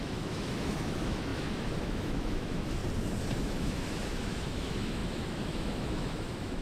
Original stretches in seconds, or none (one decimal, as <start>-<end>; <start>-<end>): 2.8-3.4